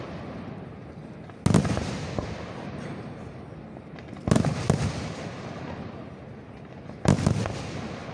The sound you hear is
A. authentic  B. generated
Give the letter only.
A